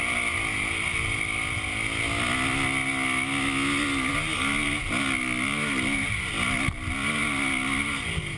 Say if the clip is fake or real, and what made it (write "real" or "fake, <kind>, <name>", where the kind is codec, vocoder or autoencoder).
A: real